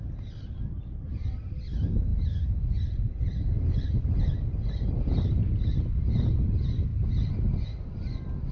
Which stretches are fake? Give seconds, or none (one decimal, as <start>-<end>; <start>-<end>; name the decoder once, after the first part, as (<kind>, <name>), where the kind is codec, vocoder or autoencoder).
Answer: none